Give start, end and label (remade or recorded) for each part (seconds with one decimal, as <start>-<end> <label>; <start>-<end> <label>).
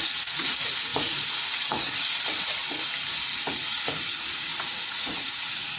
0.0-2.6 remade; 2.6-3.5 recorded; 3.5-5.8 remade